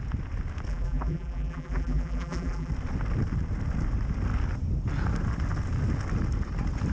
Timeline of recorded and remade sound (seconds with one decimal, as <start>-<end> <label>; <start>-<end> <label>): 0.0-0.7 recorded; 0.7-2.7 remade; 2.7-6.9 recorded